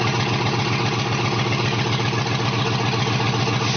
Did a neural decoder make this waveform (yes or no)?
no